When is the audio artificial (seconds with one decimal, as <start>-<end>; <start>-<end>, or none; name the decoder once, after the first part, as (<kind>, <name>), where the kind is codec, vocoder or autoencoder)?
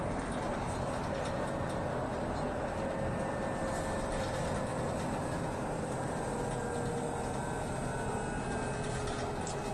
none